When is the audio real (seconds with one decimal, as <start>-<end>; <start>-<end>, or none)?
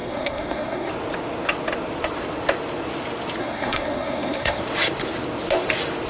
0.9-3.4; 4.6-6.1